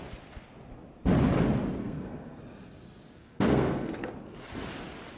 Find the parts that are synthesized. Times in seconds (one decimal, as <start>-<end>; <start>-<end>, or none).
1.8-2.4; 3.2-4.1